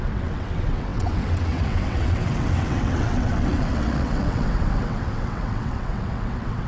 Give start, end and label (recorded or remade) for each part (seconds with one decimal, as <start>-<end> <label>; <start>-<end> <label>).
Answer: 0.0-6.7 remade